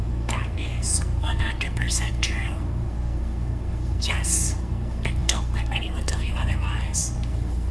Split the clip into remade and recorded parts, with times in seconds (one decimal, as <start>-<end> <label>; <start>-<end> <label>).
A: 0.0-7.7 remade